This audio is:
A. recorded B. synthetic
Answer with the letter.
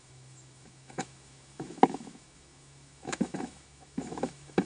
B